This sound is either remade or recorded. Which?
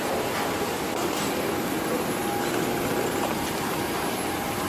recorded